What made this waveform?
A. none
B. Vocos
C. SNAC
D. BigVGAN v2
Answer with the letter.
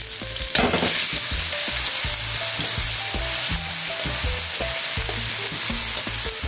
A